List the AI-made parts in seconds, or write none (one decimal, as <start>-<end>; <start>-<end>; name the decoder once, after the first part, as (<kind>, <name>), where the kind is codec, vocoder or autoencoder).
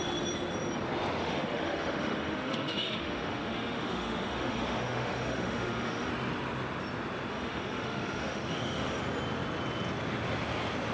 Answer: 1.2-6.1 (autoencoder, DAC-VAE); 7.3-9.0